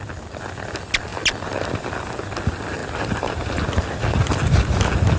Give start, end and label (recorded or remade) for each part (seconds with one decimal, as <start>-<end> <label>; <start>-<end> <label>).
0.0-5.2 recorded